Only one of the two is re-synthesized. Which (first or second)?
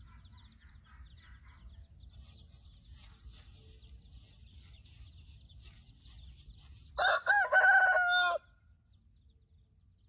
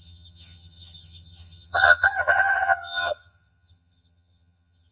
second